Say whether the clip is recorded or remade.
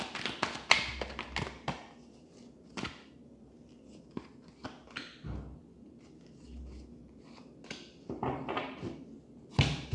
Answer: recorded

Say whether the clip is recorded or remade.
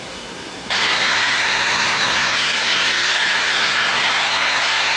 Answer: remade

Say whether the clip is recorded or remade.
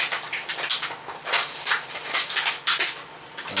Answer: recorded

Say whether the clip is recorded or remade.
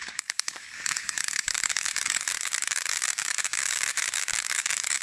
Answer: remade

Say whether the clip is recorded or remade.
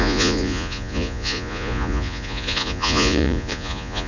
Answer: remade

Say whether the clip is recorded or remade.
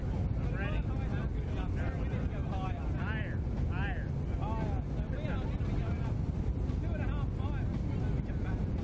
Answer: recorded